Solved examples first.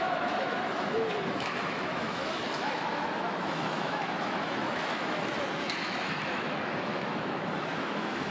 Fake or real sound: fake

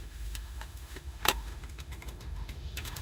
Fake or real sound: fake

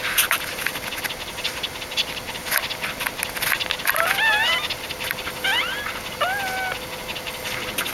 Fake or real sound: real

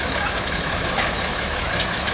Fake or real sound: fake